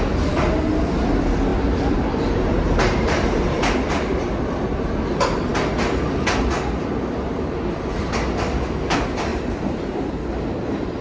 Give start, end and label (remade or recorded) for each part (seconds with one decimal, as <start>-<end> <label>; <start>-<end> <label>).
0.0-1.5 recorded; 1.5-4.3 remade; 4.3-9.3 recorded; 9.3-10.2 remade; 10.2-11.0 recorded